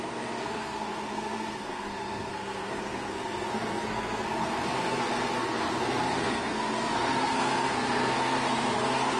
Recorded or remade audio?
remade